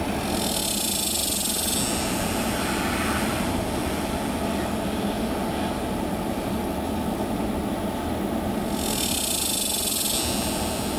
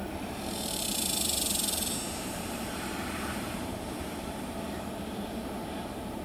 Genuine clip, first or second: first